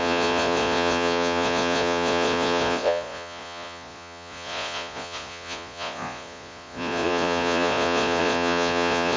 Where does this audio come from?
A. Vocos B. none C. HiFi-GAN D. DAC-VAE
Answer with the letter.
A